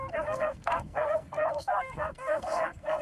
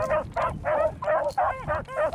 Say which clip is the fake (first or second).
first